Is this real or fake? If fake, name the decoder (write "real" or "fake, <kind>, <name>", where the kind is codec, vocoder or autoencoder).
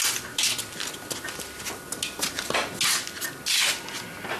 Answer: real